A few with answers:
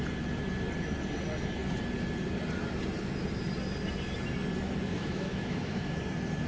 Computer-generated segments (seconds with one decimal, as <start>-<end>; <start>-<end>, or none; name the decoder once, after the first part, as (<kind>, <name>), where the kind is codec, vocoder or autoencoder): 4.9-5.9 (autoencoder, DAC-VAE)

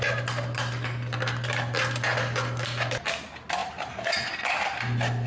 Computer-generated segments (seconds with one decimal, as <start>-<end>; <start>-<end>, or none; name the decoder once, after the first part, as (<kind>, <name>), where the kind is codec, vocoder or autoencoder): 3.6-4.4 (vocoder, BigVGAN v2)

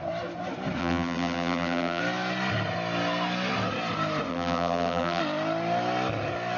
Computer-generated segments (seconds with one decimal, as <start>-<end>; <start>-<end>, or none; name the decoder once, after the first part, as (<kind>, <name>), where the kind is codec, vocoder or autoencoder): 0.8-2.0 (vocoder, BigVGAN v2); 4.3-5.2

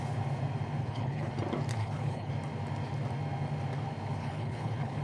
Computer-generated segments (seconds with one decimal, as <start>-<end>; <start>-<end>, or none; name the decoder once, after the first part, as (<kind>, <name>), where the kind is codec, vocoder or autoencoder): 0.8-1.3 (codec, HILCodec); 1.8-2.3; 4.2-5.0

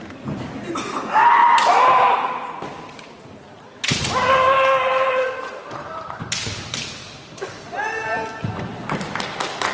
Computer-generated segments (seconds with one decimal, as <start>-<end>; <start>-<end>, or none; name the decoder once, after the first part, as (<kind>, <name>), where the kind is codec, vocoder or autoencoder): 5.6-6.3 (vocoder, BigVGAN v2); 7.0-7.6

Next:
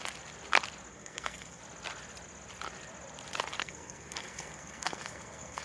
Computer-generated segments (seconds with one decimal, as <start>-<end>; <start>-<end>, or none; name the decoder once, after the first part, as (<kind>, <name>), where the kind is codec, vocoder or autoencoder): 0.9-1.6 (codec, SNAC); 3.6-5.6

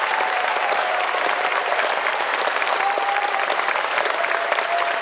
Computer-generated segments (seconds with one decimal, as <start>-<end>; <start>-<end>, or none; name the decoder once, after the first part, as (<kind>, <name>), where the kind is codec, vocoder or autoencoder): 0.5-1.1 (vocoder, BigVGAN v2); 1.6-4.6

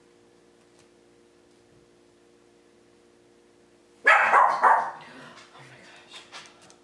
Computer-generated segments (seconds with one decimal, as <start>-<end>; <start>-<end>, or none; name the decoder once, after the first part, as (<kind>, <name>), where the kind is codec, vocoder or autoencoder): none